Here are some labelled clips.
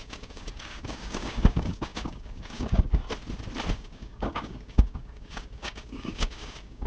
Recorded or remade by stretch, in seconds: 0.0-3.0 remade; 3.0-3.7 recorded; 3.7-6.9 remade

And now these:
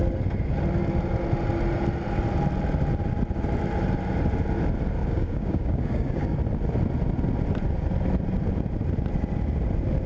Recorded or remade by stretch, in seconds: 0.0-5.0 recorded; 5.0-6.4 remade; 6.4-10.1 recorded

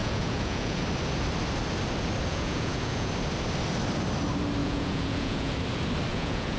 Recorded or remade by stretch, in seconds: 0.0-0.8 remade; 0.8-2.3 recorded; 2.3-3.1 remade; 3.1-4.6 recorded; 4.6-5.5 remade; 5.5-6.1 recorded; 6.1-6.6 remade

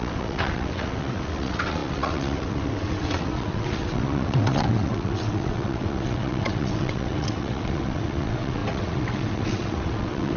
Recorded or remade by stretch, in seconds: 0.0-10.4 remade

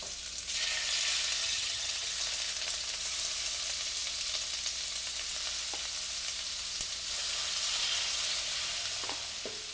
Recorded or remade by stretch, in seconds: 0.0-1.4 recorded; 1.4-2.1 remade; 2.1-9.7 recorded

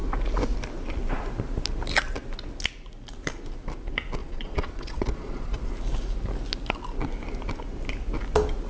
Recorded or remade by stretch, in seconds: 0.0-4.2 recorded; 4.2-5.6 remade; 5.6-8.7 recorded

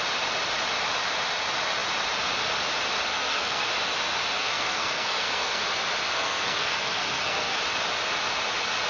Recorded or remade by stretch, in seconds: 0.0-3.1 recorded; 3.1-3.7 remade; 3.7-4.4 recorded; 4.4-5.6 remade; 5.6-6.1 recorded; 6.1-7.6 remade; 7.6-8.9 recorded

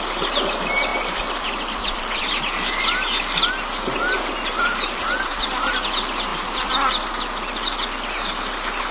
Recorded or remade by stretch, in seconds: 0.0-0.9 recorded; 0.9-2.4 remade; 2.4-4.5 recorded; 4.5-5.7 remade; 5.7-6.3 recorded; 6.3-6.9 remade; 6.9-8.9 recorded